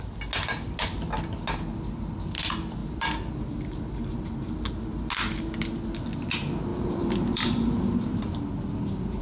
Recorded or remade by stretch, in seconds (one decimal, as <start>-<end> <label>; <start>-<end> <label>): 0.0-2.8 recorded; 2.8-4.5 remade; 4.5-6.7 recorded; 6.7-8.0 remade; 8.0-9.2 recorded